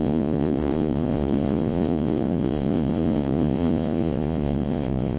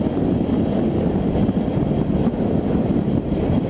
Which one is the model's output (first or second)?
first